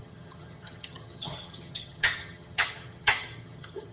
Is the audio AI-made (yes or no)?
yes